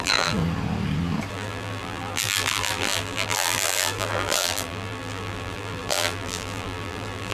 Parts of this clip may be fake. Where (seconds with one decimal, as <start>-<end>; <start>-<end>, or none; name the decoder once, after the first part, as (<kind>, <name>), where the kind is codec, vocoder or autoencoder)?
0.0-0.4 (vocoder, BigVGAN v2); 1.3-7.3